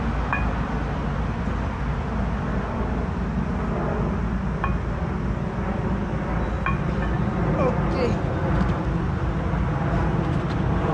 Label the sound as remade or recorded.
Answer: recorded